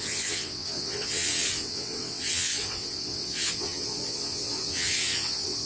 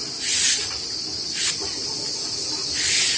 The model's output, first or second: first